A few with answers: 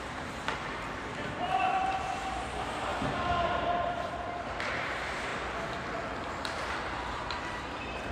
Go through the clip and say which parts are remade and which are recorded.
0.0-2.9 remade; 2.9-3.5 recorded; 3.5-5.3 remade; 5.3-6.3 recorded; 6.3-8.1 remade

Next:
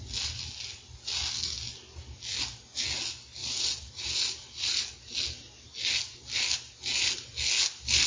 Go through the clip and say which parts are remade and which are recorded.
0.0-3.4 recorded; 3.4-4.9 remade; 4.9-8.1 recorded

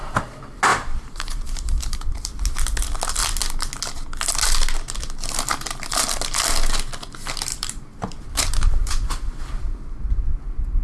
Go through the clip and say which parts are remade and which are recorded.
0.0-0.7 recorded; 0.7-2.3 remade; 2.3-7.5 recorded; 7.5-9.4 remade; 9.4-10.8 recorded

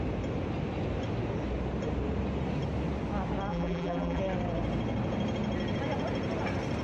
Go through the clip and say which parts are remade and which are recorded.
0.0-3.5 recorded; 3.5-4.2 remade; 4.2-6.8 recorded

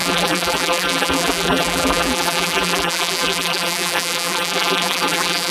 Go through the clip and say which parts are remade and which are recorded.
0.0-5.5 remade

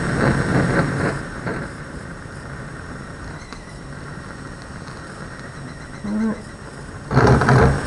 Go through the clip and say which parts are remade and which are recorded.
0.0-0.5 recorded; 0.5-4.2 remade; 4.2-6.8 recorded; 6.8-7.4 remade; 7.4-7.9 recorded